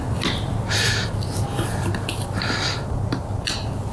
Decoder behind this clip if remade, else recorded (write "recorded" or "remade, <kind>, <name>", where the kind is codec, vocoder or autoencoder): recorded